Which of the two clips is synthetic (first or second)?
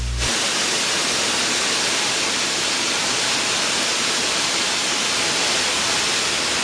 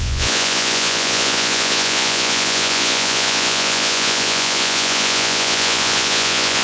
second